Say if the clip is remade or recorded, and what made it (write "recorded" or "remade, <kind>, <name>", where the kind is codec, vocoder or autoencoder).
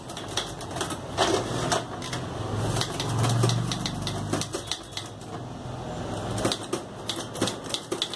recorded